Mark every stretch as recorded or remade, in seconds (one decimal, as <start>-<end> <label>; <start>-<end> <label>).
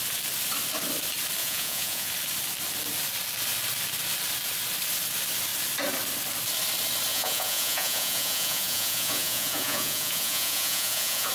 0.0-1.4 recorded; 1.4-2.1 remade; 2.1-7.1 recorded; 7.1-11.3 remade